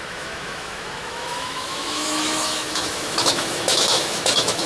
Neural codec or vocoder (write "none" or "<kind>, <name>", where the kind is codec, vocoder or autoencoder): autoencoder, DAC-VAE